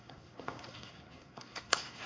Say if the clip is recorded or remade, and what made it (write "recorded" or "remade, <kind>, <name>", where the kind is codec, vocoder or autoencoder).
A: remade, codec, SNAC